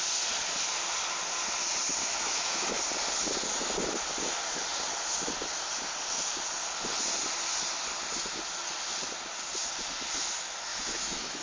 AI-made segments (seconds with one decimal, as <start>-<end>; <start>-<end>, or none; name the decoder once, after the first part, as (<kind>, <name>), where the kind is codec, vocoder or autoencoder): 2.0-2.8 (autoencoder, DAC-VAE); 10.7-11.4